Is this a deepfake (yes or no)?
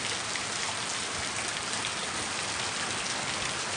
no